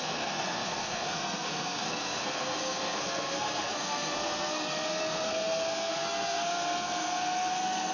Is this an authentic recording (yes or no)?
no